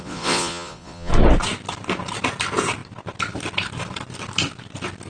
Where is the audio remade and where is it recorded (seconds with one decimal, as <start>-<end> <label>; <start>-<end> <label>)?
0.0-1.1 remade; 1.1-5.1 recorded